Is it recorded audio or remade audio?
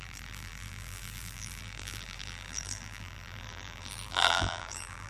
remade